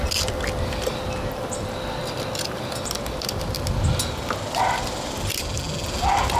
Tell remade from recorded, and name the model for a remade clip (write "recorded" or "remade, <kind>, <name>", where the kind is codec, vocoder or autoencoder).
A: recorded